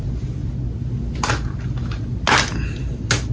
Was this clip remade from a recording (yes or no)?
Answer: no